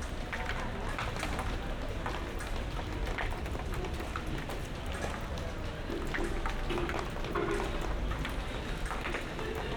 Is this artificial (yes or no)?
no